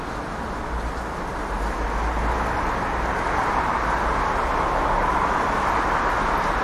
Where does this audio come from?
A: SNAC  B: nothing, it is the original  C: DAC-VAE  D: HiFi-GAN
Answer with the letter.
B